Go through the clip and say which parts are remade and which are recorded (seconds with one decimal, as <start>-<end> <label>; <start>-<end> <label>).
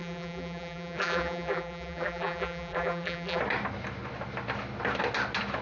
0.0-3.4 remade; 3.4-5.6 recorded